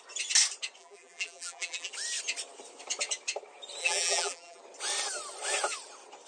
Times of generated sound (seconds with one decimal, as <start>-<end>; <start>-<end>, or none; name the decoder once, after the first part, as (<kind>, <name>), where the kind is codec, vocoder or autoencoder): 0.8-1.9 (vocoder, BigVGAN v2); 3.8-4.6